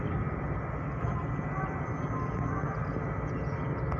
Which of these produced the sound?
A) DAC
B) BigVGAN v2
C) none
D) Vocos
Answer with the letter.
C